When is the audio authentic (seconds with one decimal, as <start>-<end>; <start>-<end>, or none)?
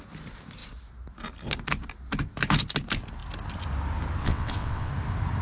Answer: 0.0-4.2; 4.9-5.4